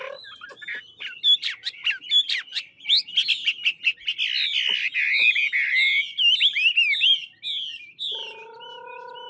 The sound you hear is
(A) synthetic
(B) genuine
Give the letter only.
B